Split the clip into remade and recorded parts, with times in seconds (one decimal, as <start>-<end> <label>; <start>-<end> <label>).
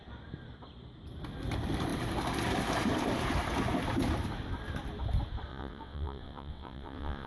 0.0-5.5 recorded; 5.5-7.3 remade